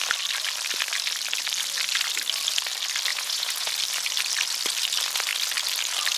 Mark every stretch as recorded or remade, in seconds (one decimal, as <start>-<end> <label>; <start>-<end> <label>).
0.0-3.1 recorded; 3.1-3.7 remade; 3.7-6.2 recorded

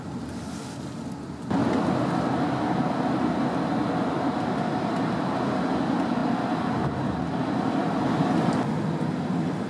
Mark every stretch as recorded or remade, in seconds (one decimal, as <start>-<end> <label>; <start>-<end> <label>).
0.0-9.7 recorded

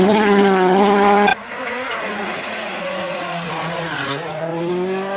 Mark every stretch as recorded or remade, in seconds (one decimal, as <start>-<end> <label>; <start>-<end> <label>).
0.0-4.5 remade; 4.5-5.2 recorded

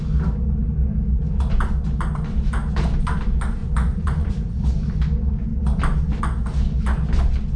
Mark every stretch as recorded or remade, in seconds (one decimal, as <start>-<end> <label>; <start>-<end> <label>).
0.0-3.6 recorded; 3.6-4.3 remade; 4.3-7.6 recorded

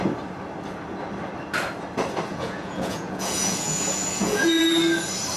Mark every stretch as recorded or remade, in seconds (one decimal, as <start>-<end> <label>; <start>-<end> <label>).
0.0-2.3 recorded; 2.3-4.6 remade; 4.6-5.4 recorded

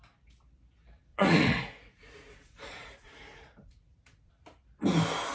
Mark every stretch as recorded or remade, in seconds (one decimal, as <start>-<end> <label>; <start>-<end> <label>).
0.0-1.1 recorded; 1.1-4.3 remade; 4.3-5.3 recorded

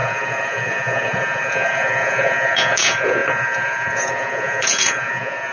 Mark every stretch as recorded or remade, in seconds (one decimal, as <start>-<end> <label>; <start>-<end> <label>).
0.0-5.5 remade

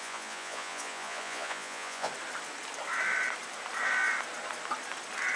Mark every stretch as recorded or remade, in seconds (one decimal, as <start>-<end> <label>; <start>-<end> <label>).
0.0-2.1 remade; 2.1-5.4 recorded